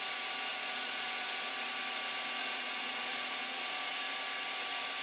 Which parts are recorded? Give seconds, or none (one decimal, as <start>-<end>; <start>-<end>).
0.0-0.5; 1.5-2.4; 4.0-5.0